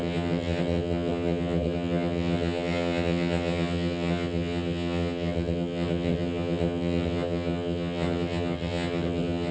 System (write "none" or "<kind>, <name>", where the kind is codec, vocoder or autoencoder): vocoder, HiFi-GAN